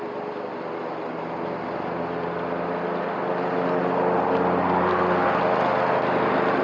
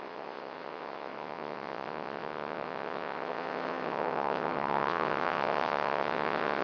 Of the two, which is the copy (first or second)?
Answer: second